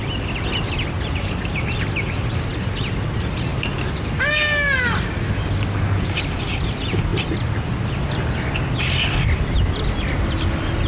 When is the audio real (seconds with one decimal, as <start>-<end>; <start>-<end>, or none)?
0.0-10.9

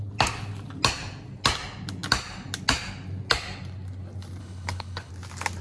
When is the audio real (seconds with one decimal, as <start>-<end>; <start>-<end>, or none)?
0.0-4.4; 5.1-5.6

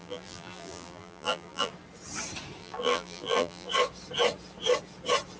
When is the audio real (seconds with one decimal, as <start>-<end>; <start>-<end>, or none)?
1.7-2.6; 3.7-5.4

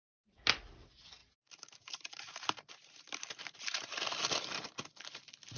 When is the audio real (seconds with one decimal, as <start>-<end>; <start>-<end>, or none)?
0.0-1.2; 4.1-5.6